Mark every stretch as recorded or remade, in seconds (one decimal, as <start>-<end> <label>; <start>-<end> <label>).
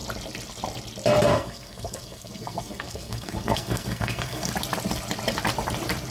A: 0.0-1.3 recorded; 1.3-4.5 remade; 4.5-6.1 recorded